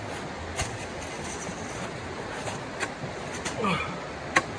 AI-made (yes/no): no